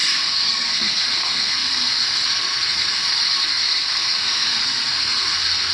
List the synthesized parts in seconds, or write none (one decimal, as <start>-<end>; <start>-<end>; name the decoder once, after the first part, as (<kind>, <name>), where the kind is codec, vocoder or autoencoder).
0.0-5.7 (codec, SNAC)